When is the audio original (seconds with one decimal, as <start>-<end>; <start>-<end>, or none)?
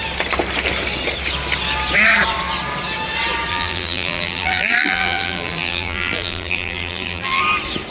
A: 0.0-3.5; 7.4-7.9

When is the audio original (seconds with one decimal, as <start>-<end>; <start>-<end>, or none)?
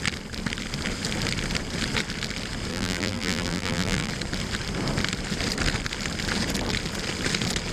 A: 0.0-2.7; 4.1-7.7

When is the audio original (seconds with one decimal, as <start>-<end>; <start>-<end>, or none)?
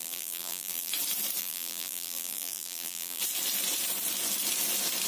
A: 0.9-1.4; 3.2-5.1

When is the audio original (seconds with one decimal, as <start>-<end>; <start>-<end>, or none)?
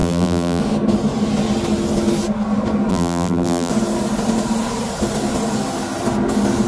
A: 0.6-2.9; 3.7-6.7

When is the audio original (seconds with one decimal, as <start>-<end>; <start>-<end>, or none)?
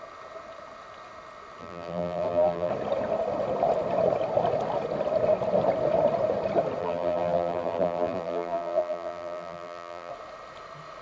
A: 0.0-1.6; 2.7-6.8; 10.1-11.0